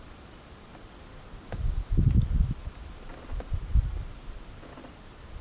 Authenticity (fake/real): real